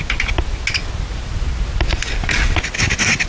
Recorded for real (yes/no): yes